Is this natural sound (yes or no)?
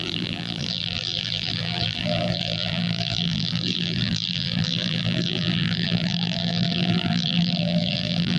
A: no